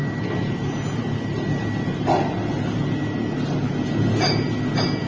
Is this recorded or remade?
recorded